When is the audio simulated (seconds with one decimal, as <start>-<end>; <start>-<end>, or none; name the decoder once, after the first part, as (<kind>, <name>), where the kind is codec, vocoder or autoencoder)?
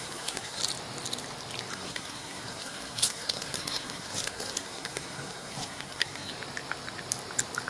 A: 0.0-0.6 (codec, SNAC); 1.7-6.3